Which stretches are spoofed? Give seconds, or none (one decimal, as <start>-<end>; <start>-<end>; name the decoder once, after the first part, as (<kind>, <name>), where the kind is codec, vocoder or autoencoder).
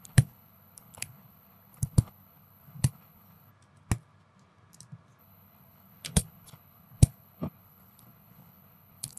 0.0-3.5 (codec, HILCodec); 5.2-9.2